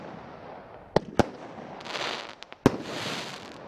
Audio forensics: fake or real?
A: real